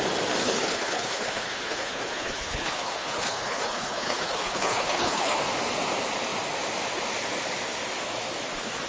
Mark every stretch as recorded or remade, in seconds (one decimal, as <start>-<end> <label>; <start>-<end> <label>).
0.0-0.4 recorded; 0.4-5.4 remade; 5.4-8.9 recorded